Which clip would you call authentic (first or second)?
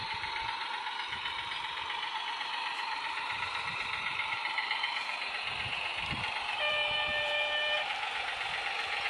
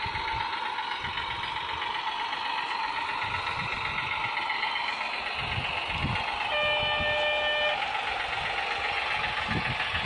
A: second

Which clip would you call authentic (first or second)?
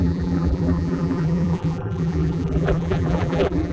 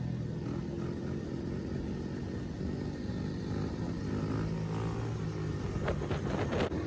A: second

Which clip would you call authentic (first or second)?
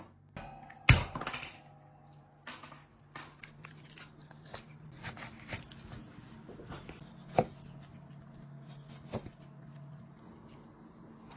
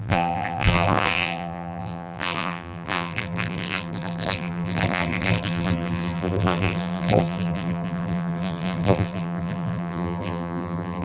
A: first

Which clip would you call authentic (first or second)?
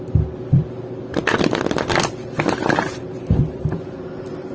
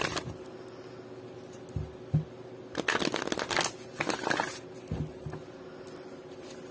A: second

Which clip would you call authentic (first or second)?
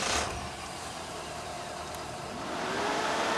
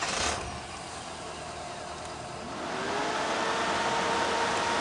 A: second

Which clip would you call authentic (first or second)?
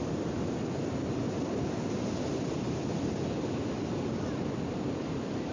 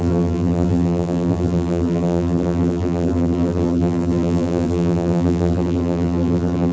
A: first